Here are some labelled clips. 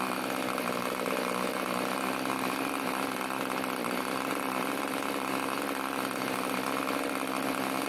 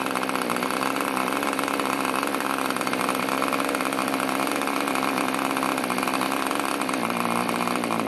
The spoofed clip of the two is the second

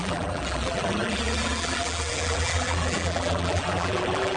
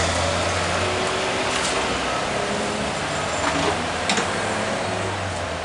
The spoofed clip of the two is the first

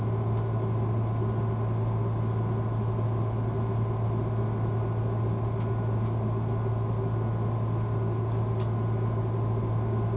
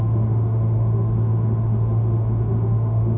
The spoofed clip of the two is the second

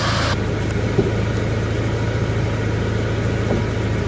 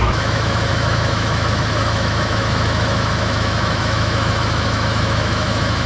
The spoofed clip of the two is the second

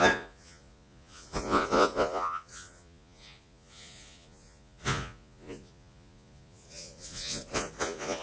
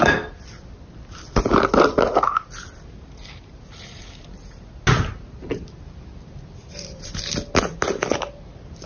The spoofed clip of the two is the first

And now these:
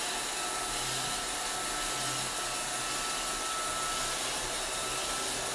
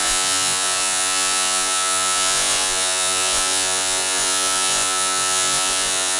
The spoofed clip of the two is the second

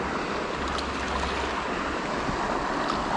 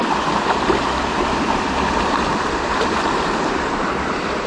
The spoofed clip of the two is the second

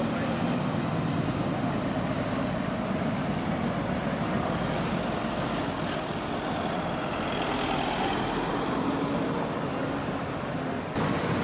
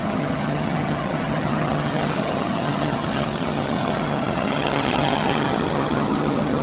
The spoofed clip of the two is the second